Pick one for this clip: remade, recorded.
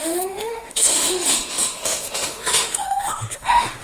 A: remade